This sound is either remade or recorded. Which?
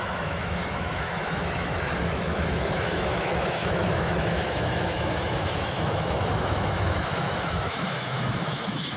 remade